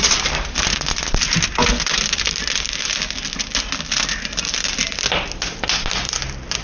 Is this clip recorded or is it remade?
recorded